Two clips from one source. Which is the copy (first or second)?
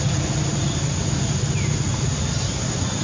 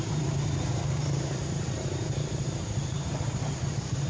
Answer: second